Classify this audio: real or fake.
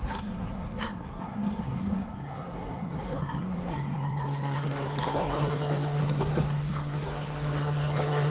fake